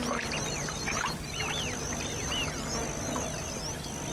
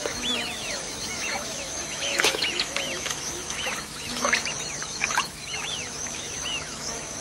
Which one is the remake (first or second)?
second